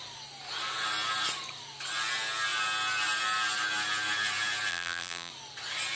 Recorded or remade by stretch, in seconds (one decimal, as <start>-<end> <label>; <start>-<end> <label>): 0.0-4.7 recorded; 4.7-5.3 remade; 5.3-6.0 recorded